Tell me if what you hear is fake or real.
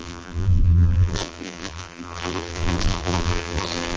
fake